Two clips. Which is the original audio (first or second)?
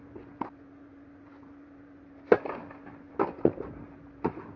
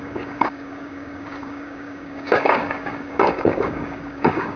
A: first